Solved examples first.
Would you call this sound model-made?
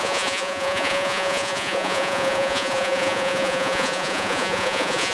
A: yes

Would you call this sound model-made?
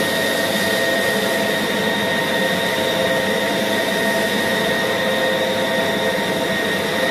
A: no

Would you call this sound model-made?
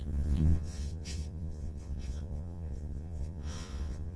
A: yes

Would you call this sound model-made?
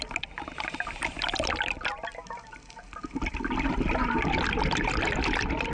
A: no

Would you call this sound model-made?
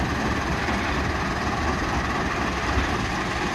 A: no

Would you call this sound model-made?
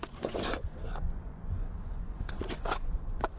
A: yes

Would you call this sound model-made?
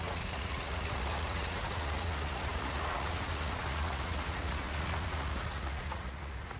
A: yes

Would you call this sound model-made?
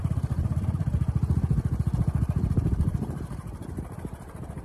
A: yes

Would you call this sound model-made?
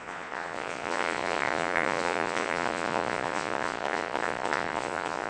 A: yes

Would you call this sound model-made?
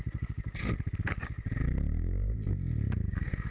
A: no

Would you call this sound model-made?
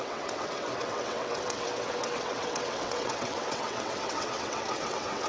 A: yes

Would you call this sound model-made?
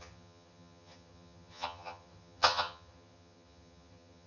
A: yes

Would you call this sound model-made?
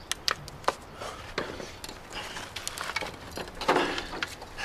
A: no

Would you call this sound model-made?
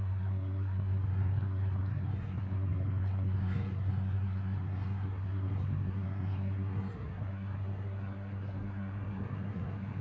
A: yes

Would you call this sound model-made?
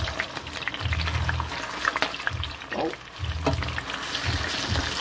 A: no